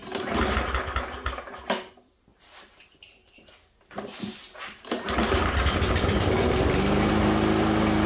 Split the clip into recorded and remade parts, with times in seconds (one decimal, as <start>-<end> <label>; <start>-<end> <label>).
0.0-8.1 recorded